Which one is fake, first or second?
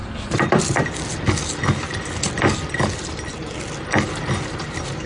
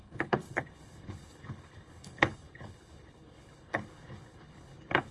second